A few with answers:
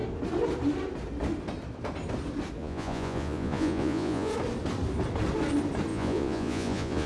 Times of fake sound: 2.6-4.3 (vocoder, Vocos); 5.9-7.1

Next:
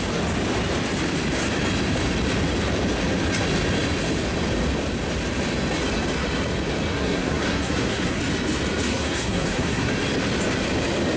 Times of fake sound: 6.9-8.2 (codec, SNAC); 8.9-9.9

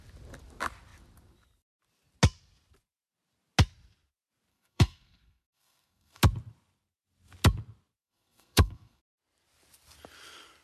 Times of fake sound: 4.5-6.2 (codec, SNAC); 8.0-9.0

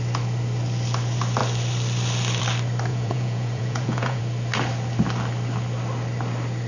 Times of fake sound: 2.9-4.2 (vocoder, Vocos)

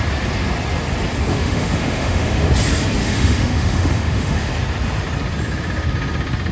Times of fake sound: 1.3-2.5 (autoencoder, DAC-VAE); 3.0-4.5